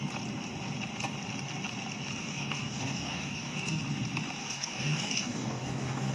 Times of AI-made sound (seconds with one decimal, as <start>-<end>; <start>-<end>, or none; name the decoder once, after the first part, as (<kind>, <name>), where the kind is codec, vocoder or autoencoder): 2.2-3.8 (codec, DAC); 4.4-6.1